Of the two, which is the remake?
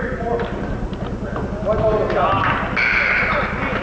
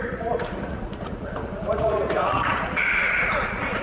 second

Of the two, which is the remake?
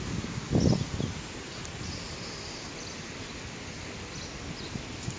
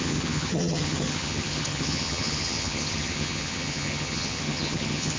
second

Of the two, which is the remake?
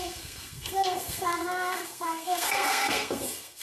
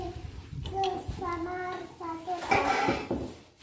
first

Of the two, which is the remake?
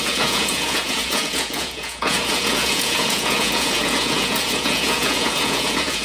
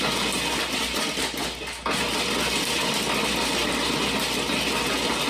first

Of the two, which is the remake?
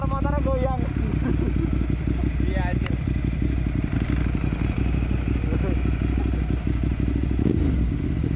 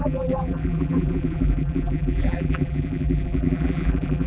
second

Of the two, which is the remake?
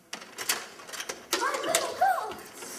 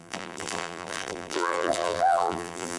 second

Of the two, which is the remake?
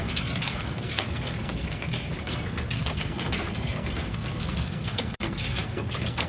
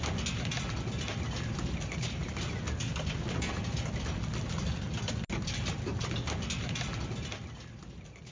first